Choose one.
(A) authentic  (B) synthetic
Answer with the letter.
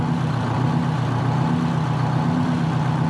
A